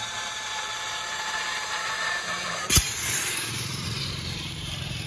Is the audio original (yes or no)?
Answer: no